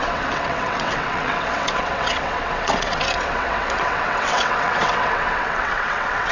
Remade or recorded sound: remade